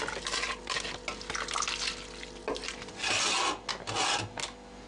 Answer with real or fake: real